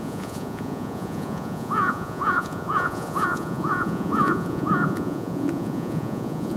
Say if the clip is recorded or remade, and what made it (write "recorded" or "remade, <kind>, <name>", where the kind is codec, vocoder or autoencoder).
remade, vocoder, Vocos